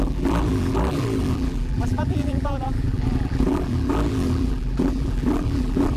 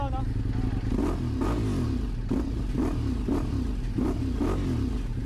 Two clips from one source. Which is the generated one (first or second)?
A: first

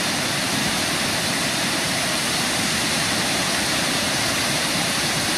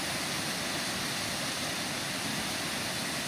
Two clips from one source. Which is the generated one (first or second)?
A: first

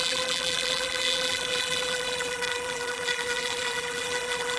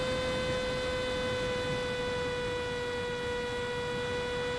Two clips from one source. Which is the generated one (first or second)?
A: first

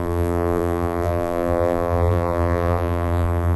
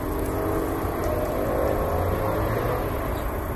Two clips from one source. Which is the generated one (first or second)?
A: first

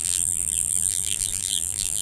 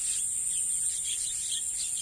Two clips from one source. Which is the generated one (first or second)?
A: first